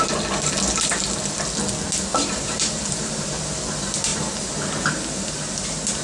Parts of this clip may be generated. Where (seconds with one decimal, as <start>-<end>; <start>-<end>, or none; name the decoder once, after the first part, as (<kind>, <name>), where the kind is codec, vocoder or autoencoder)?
2.1-3.1 (vocoder, BigVGAN v2)

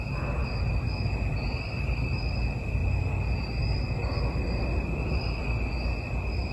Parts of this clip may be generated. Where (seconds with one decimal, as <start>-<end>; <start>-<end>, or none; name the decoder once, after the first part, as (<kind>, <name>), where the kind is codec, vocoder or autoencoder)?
none

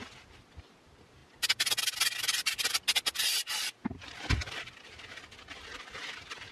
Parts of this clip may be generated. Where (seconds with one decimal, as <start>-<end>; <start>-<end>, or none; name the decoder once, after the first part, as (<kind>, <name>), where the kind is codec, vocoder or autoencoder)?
none

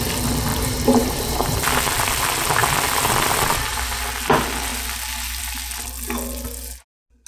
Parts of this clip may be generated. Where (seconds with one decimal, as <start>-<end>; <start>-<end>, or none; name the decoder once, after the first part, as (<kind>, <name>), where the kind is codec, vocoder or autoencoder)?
0.5-1.6 (vocoder, BigVGAN v2)

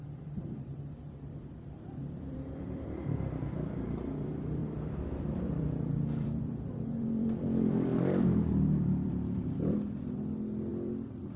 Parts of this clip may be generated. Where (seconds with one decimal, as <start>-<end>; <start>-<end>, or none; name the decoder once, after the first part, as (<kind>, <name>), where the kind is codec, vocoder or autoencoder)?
0.0-11.4 (vocoder, BigVGAN v2)

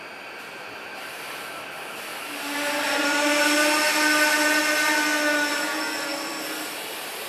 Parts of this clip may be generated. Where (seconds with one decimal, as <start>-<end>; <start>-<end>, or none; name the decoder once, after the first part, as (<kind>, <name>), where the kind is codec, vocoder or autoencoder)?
6.1-7.3 (vocoder, BigVGAN v2)